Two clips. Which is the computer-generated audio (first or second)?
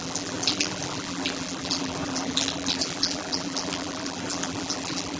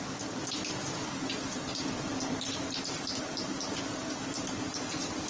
first